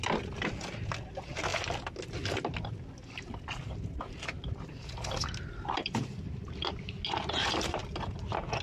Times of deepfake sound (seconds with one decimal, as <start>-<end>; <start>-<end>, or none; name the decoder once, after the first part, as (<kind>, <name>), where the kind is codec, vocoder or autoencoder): none

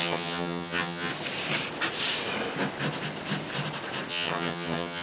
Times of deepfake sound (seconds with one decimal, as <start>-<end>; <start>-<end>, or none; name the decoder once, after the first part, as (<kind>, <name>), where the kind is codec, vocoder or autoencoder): 0.0-1.1 (vocoder, HiFi-GAN); 4.1-5.0

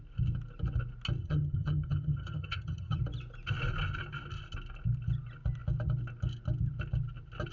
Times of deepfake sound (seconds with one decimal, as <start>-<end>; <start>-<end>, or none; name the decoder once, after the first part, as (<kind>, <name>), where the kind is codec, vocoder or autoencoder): 1.2-3.0 (vocoder, HiFi-GAN)

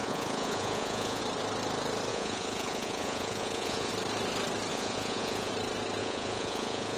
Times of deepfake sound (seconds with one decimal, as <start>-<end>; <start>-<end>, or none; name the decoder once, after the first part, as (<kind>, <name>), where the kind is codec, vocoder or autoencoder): 0.0-1.2 (vocoder, Vocos); 2.1-3.9; 4.7-5.5; 6.0-7.0

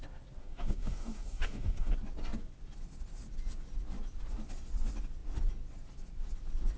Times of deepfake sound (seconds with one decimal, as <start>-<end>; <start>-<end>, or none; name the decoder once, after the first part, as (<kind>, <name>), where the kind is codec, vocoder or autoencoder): 0.4-1.9 (codec, DAC)

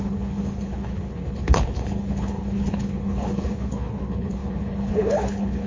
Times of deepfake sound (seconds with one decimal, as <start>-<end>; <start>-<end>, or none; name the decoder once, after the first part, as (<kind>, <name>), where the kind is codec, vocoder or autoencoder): 0.0-5.7 (codec, HILCodec)

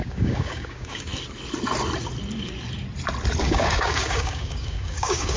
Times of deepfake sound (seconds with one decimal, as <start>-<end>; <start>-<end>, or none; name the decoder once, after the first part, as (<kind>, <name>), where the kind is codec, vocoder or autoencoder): 0.0-1.1 (codec, DAC); 3.4-5.4